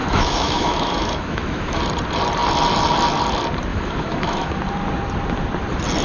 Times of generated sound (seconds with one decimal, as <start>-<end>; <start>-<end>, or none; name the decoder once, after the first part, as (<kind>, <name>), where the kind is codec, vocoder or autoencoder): 0.0-1.8 (autoencoder, DAC-VAE); 3.7-4.6